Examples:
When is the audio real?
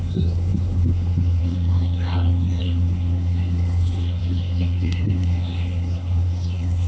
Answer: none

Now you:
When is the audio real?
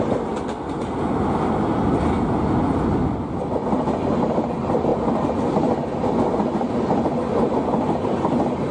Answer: 0.0-8.7